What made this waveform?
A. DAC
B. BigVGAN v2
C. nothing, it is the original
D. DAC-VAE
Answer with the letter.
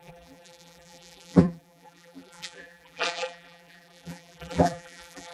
B